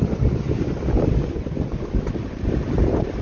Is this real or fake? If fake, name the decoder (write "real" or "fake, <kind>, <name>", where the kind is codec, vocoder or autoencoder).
real